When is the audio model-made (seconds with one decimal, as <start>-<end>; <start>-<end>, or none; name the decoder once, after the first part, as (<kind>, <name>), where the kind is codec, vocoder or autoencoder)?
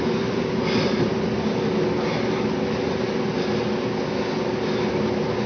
0.0-1.1 (vocoder, BigVGAN v2); 4.4-5.5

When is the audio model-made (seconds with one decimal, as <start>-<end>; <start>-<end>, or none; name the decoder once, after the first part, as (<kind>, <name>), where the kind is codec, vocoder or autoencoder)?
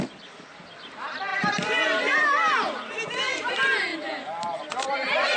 1.3-2.9 (vocoder, BigVGAN v2)